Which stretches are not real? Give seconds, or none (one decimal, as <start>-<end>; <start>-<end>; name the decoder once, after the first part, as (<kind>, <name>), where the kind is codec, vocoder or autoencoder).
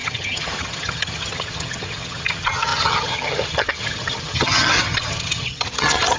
0.0-6.2 (vocoder, HiFi-GAN)